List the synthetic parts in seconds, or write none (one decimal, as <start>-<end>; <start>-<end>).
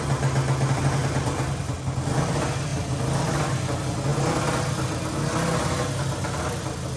none